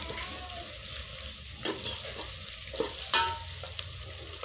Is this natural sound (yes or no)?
yes